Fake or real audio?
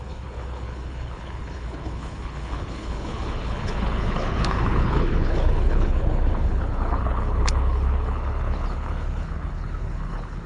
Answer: fake